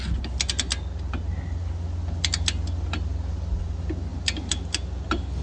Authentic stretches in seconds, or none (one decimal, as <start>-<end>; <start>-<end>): 0.0-5.4

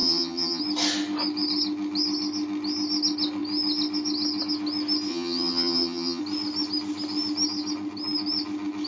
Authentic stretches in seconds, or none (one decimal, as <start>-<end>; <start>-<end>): 0.6-5.1; 6.2-8.9

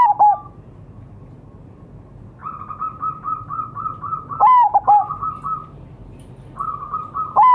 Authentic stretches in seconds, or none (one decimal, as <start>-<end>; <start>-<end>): 0.0-7.5

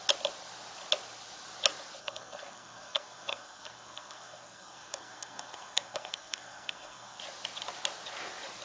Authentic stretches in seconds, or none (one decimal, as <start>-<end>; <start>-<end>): 0.0-2.0; 7.2-8.6

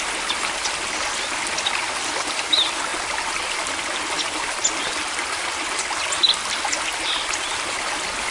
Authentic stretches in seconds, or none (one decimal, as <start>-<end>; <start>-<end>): 0.0-8.3

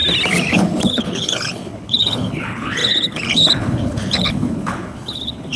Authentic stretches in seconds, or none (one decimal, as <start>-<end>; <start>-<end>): 0.0-0.5